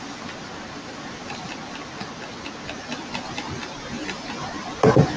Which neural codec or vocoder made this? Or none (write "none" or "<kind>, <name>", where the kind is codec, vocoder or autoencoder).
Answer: none